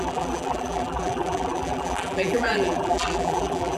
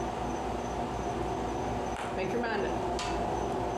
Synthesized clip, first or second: first